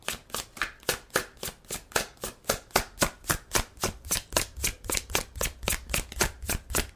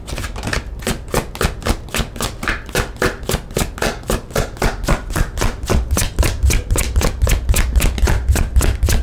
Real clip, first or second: second